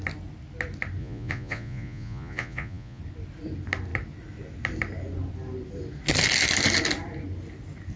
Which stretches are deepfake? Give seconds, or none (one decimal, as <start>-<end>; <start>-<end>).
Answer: 1.0-3.0